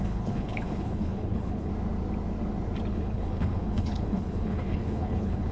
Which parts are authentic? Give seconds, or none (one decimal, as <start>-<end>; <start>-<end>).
1.7-2.9